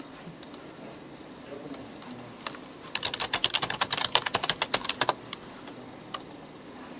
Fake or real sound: real